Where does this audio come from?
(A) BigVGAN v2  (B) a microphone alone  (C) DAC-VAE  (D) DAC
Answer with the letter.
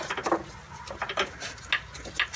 B